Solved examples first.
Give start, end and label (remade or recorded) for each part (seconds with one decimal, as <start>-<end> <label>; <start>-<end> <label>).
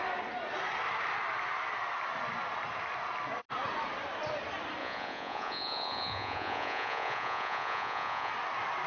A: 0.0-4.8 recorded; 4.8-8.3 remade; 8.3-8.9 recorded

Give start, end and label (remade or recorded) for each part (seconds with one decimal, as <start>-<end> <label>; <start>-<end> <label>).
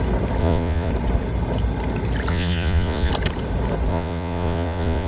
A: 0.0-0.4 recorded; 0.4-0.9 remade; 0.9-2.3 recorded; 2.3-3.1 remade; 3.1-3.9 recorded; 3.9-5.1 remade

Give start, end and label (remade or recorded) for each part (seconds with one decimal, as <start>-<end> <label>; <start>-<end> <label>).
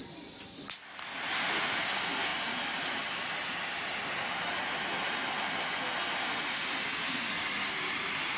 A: 0.0-8.4 recorded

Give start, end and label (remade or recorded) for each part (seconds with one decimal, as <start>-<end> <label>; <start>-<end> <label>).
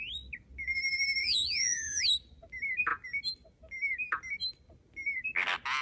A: 0.0-1.2 recorded; 1.2-2.0 remade; 2.0-5.8 recorded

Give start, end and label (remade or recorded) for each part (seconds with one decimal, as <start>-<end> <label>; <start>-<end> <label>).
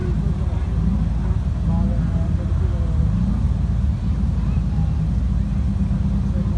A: 0.0-6.6 recorded